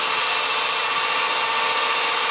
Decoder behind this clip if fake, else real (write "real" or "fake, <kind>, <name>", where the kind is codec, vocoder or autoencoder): real